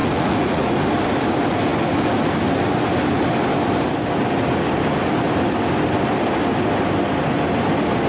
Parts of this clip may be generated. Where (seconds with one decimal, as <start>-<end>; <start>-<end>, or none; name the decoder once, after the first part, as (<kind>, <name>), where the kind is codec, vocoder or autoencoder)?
0.0-0.7 (vocoder, Vocos)